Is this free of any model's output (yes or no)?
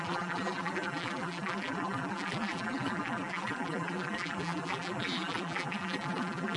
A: no